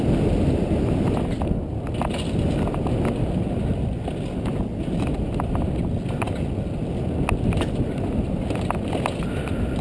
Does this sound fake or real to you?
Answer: real